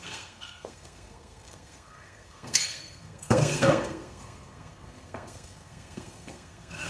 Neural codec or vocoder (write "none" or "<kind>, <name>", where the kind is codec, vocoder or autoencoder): codec, SNAC